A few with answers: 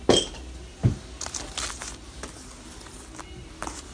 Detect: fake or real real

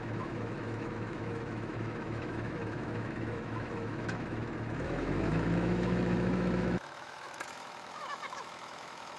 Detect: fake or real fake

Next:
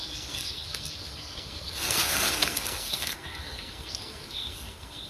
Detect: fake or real fake